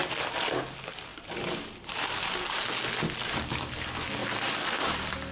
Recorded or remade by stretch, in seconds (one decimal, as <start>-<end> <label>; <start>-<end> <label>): 0.0-0.6 remade; 0.6-5.3 recorded